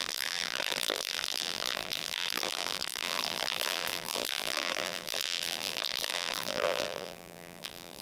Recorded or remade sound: remade